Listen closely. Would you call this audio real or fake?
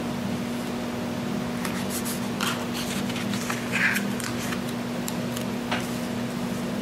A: real